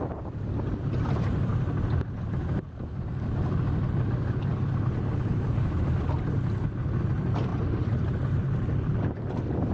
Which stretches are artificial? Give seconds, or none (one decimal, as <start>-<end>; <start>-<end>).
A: 4.5-6.0; 7.5-8.5